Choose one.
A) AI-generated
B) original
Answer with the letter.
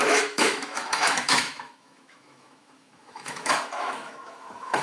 A